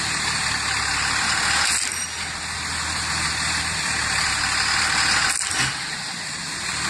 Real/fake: real